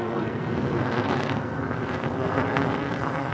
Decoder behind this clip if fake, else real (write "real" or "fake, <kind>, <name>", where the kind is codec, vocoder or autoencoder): fake, codec, SNAC